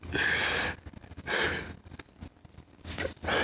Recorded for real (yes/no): yes